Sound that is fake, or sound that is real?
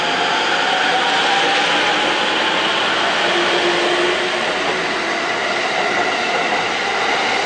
real